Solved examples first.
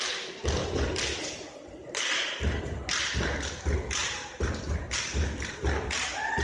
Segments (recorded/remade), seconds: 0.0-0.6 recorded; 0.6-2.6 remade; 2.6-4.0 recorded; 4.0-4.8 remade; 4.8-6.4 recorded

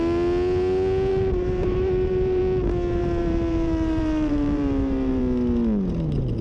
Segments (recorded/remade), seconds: 0.0-1.1 recorded; 1.1-2.4 remade; 2.4-3.0 recorded; 3.0-5.2 remade; 5.2-6.4 recorded

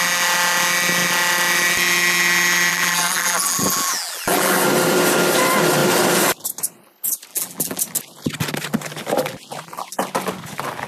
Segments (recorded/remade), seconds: 0.0-2.7 recorded; 2.7-4.6 remade; 4.6-7.3 recorded; 7.3-7.8 remade; 7.8-10.9 recorded

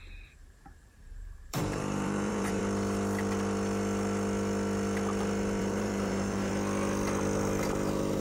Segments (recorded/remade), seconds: 0.0-0.4 recorded; 0.4-2.6 remade; 2.6-5.6 recorded; 5.6-6.5 remade; 6.5-8.2 recorded